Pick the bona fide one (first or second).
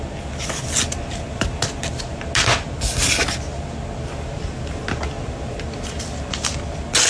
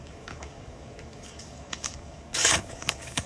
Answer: first